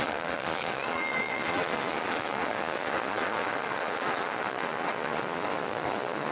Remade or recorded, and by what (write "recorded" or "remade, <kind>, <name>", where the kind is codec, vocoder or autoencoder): remade, vocoder, Vocos